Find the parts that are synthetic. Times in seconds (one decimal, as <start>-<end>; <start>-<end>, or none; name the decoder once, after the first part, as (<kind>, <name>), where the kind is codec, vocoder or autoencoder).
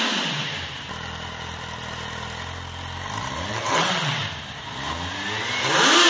3.5-4.1 (vocoder, WaveNeXt)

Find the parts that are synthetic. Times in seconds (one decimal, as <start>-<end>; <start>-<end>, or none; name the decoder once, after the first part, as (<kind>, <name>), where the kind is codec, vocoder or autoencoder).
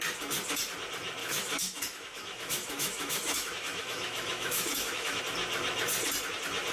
1.2-5.2 (autoencoder, DAC-VAE)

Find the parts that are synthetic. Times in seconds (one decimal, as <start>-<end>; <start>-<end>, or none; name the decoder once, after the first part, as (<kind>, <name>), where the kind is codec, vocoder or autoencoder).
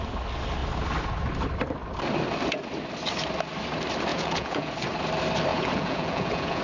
4.1-4.7 (vocoder, Vocos); 5.5-6.6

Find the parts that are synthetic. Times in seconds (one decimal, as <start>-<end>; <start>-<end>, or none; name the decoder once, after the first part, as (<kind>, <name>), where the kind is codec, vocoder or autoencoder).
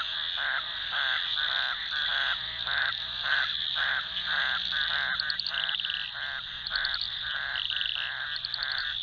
none